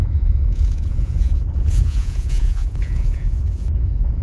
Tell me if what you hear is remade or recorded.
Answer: remade